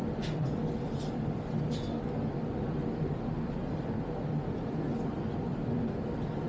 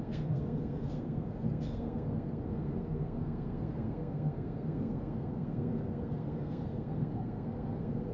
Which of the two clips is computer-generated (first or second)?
second